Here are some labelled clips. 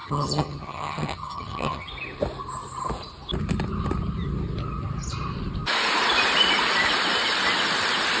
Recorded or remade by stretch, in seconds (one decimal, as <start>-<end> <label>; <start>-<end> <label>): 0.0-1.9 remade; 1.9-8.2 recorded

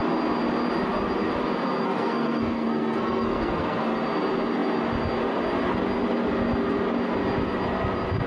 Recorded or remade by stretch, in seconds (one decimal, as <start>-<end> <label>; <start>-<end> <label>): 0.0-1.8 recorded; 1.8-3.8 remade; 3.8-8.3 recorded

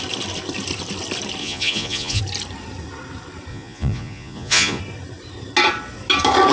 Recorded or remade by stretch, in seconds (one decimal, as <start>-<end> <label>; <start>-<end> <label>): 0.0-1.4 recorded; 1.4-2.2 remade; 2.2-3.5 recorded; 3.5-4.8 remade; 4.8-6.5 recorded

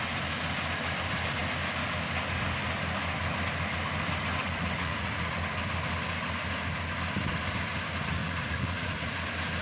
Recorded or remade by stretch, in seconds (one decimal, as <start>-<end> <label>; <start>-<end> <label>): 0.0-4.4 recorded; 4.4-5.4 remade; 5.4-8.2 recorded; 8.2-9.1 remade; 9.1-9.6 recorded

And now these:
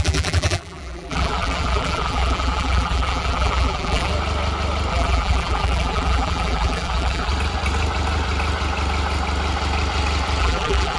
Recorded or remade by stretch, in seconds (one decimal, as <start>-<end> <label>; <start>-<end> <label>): 0.0-4.1 remade; 4.1-4.9 recorded; 4.9-7.3 remade; 7.3-10.4 recorded; 10.4-11.0 remade

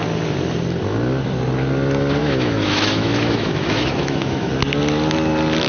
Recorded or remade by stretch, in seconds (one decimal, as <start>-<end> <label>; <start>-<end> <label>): 0.0-2.2 recorded; 2.2-4.5 remade; 4.5-5.7 recorded

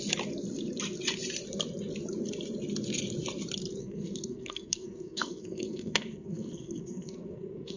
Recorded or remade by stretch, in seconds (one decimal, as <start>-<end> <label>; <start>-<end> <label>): 0.0-3.8 recorded; 3.8-7.8 remade